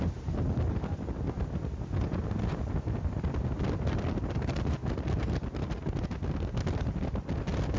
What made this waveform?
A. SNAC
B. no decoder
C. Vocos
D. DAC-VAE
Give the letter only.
B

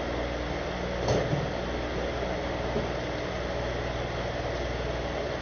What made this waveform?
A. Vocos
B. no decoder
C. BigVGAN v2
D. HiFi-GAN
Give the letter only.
B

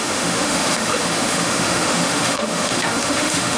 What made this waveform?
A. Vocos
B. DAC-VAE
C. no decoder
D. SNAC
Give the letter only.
B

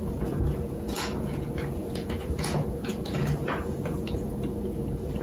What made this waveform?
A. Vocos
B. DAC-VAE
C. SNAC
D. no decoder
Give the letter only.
A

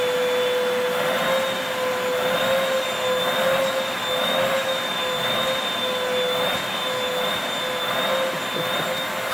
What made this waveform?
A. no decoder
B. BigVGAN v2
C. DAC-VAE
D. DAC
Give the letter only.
A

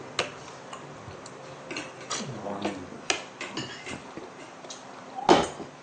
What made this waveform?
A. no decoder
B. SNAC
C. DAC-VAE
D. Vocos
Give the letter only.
A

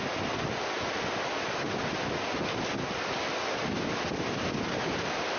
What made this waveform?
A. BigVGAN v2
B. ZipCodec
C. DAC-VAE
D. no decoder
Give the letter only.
D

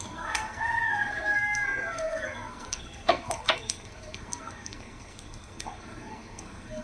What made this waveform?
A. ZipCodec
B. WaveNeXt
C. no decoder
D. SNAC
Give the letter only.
D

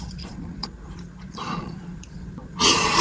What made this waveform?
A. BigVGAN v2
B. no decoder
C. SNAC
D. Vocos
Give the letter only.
D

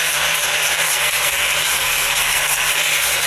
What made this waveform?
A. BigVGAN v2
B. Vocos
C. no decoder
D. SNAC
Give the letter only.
D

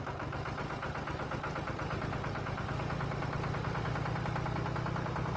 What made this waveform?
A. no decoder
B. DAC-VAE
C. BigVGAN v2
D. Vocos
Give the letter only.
A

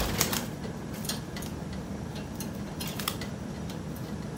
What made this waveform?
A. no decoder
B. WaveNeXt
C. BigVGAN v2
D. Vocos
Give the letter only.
C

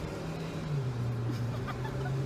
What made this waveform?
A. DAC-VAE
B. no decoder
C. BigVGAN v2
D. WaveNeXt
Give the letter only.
C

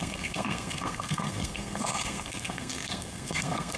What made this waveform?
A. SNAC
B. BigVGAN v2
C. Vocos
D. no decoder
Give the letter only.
A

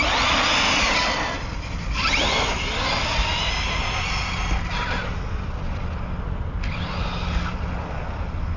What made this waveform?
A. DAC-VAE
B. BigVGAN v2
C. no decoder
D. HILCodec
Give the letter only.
C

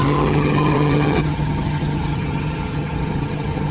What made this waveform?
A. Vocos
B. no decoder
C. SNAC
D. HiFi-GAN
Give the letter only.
D